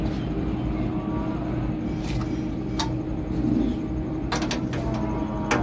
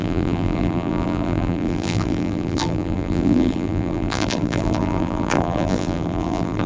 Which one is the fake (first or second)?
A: second